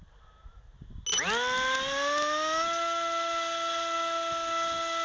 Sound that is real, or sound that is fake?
real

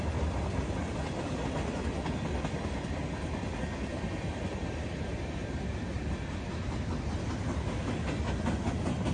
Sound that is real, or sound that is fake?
real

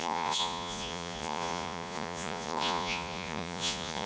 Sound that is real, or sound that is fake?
fake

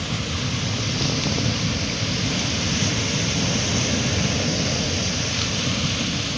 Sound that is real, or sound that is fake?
real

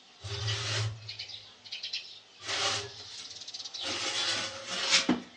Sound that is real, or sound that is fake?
real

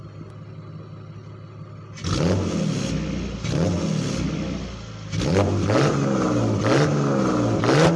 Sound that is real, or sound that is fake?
real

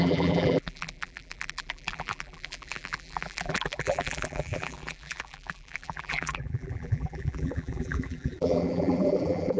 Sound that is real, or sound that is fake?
fake